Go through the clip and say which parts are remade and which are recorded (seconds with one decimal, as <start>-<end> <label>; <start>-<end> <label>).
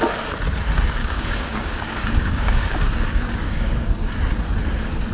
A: 0.0-1.0 recorded; 1.0-4.1 remade; 4.1-5.1 recorded